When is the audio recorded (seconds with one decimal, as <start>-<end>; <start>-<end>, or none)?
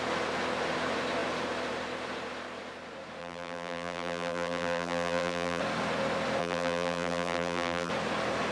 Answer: 0.0-3.2; 5.6-6.4; 7.9-8.5